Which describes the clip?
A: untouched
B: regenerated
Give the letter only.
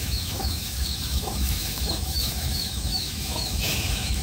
B